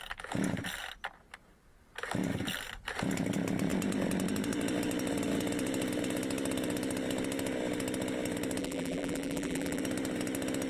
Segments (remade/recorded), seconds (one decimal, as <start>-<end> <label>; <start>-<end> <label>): 0.0-8.6 recorded; 8.6-9.8 remade; 9.8-10.7 recorded